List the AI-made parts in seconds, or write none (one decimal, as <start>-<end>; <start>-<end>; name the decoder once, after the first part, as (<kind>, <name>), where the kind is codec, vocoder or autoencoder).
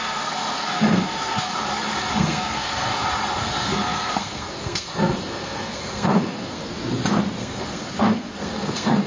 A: 0.0-1.5 (codec, SNAC); 2.1-2.9; 3.4-6.7; 7.4-9.1